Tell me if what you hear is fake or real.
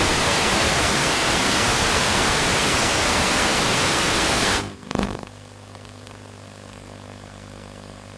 fake